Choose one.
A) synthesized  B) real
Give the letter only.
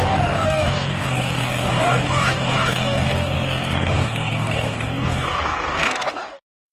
A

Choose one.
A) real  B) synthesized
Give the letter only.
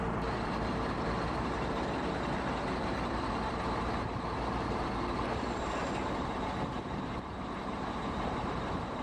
B